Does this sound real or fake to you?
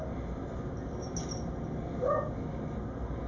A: real